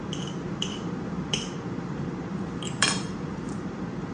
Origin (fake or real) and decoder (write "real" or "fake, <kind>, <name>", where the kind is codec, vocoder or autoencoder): fake, vocoder, BigVGAN v2